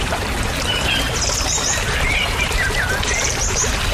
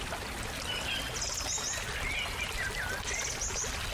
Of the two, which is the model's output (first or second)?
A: first